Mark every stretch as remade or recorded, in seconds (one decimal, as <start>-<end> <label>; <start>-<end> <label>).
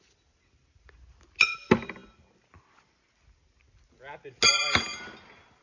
0.0-5.6 recorded